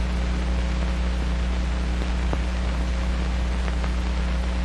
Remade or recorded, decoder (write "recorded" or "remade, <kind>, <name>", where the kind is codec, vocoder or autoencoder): recorded